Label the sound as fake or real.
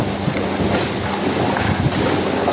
real